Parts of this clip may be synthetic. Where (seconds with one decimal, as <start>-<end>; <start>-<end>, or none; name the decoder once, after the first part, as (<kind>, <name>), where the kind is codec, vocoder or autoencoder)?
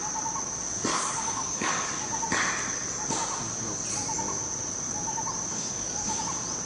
0.9-1.9 (codec, DAC); 5.5-6.2